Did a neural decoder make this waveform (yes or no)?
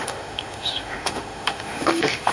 yes